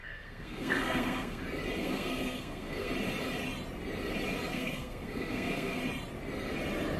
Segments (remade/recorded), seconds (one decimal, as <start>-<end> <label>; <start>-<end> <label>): 0.0-1.4 remade; 1.4-1.8 recorded; 1.8-2.9 remade; 2.9-4.5 recorded; 4.5-5.8 remade; 5.8-7.0 recorded